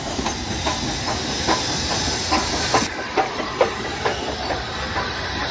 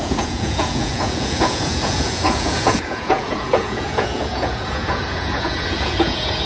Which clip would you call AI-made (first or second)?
second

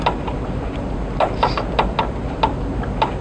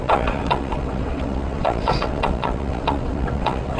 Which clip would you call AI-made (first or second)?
second